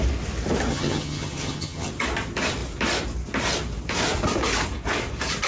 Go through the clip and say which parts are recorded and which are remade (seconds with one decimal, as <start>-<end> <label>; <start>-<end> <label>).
0.0-0.7 recorded; 0.7-1.9 remade; 1.9-5.5 recorded